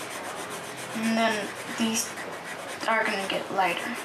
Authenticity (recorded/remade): recorded